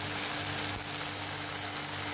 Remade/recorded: recorded